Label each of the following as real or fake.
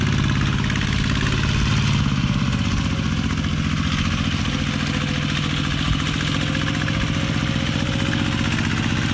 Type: real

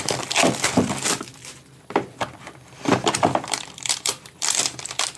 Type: fake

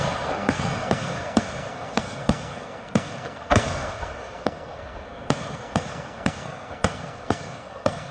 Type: fake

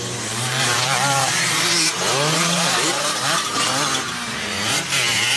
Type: fake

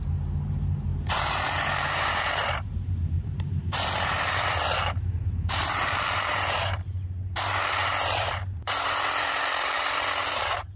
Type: fake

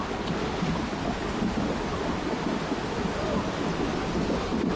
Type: real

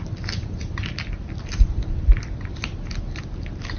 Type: real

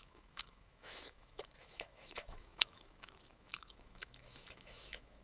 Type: fake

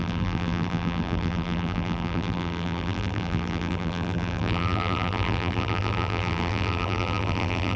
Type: fake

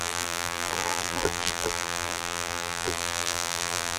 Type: fake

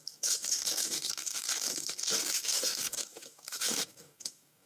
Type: fake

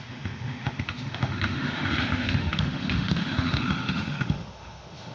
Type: fake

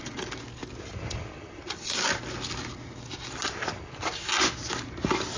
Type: real